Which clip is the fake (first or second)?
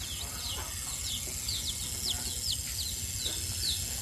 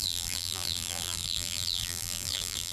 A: second